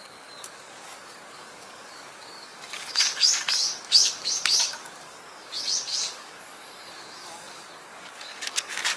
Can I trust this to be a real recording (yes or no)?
no